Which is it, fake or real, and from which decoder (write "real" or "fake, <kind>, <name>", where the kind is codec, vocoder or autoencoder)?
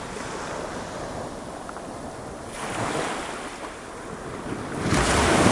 real